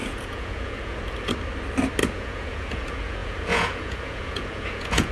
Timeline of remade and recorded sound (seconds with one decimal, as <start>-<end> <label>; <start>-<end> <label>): 0.0-1.0 remade; 1.0-2.0 recorded; 2.0-5.1 remade

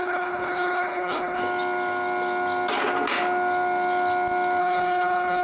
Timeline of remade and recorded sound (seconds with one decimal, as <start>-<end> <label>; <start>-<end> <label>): 0.0-1.4 remade; 1.4-4.6 recorded; 4.6-5.4 remade

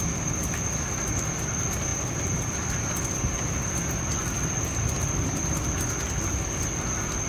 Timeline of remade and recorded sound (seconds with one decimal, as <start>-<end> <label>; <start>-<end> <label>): 0.0-7.3 recorded

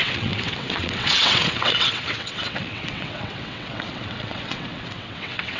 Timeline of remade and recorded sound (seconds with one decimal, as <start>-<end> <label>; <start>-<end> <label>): 0.0-5.6 remade